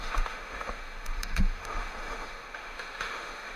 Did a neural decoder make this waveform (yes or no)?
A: yes